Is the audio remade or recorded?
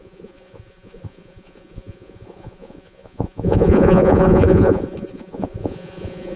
remade